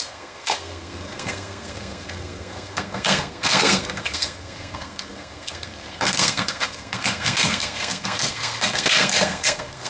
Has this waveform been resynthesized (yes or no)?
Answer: yes